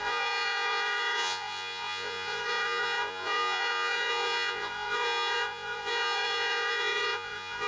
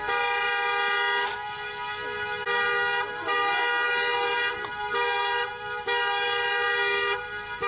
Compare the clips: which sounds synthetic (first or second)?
first